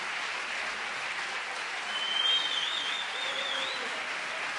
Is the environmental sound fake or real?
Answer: real